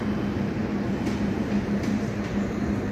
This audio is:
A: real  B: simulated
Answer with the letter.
B